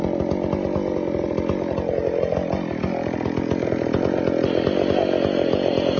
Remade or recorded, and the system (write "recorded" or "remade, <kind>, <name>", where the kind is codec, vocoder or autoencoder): recorded